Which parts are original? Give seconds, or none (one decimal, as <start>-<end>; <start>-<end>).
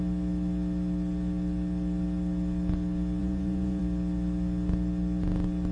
0.0-3.2; 3.8-5.7